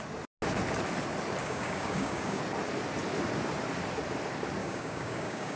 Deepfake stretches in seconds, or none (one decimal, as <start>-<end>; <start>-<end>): 1.4-2.4; 4.6-5.6